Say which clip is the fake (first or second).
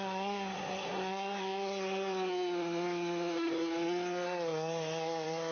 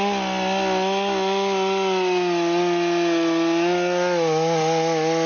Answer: first